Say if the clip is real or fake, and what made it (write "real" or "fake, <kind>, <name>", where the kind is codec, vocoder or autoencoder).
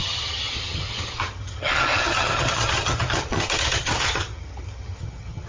fake, vocoder, HiFi-GAN